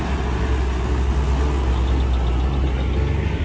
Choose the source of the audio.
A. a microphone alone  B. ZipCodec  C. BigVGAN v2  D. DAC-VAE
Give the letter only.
A